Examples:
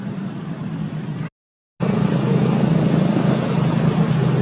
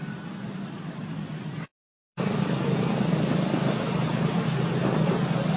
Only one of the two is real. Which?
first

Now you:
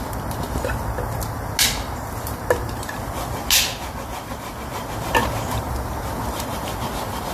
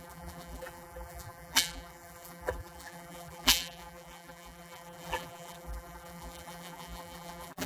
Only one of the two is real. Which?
first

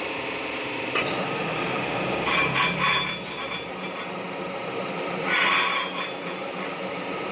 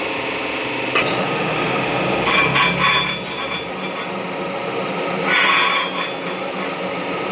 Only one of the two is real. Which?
second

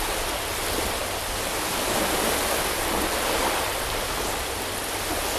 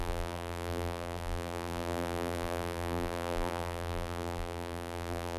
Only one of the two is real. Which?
first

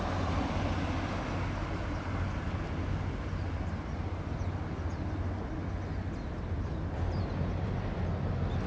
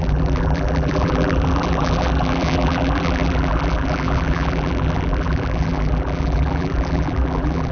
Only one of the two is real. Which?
first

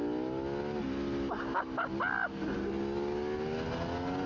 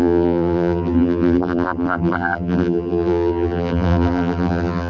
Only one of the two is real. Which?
first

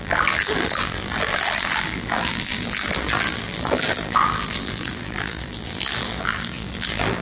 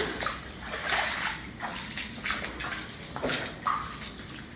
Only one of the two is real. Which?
second